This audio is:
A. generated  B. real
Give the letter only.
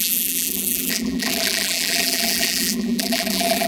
A